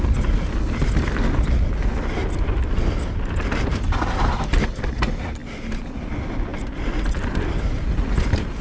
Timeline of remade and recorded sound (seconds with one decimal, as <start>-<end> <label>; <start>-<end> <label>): 0.0-2.2 recorded; 2.2-3.2 remade; 3.2-6.5 recorded; 6.5-8.6 remade